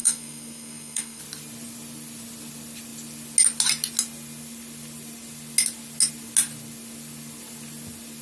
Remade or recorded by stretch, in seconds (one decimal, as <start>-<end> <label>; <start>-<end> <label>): 0.0-1.2 remade; 1.2-8.2 recorded